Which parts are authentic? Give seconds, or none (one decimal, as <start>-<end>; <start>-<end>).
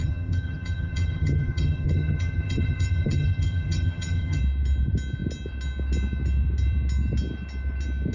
4.4-8.1